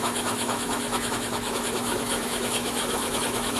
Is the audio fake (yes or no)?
yes